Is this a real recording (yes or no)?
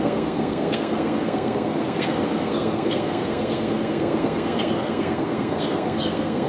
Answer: no